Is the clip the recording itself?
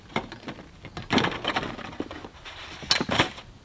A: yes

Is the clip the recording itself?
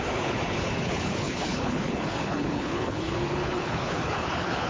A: no